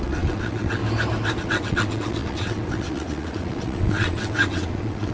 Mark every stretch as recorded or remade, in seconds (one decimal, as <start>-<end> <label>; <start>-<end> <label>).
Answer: 0.0-0.8 remade; 0.8-1.4 recorded; 1.4-5.1 remade